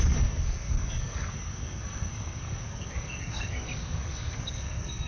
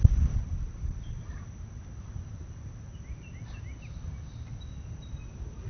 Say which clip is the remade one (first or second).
first